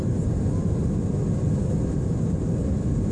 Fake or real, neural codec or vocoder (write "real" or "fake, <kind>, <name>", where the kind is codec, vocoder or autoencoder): real